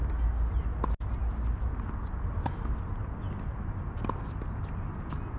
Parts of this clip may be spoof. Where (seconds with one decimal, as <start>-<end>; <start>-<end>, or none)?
none